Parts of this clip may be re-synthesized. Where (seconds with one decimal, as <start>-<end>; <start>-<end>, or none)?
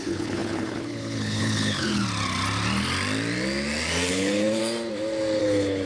0.0-2.0; 4.1-4.6; 5.4-5.9